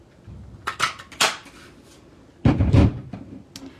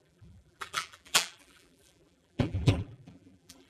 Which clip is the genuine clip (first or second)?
first